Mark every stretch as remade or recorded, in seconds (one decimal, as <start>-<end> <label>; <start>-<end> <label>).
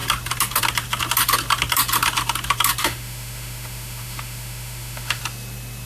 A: 0.0-2.8 recorded; 2.8-5.2 remade; 5.2-5.9 recorded